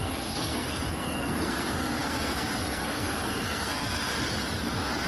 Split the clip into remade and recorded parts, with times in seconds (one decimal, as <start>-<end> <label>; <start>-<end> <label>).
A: 0.0-4.1 remade; 4.1-5.1 recorded